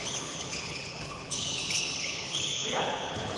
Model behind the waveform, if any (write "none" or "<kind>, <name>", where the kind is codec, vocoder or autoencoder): codec, HILCodec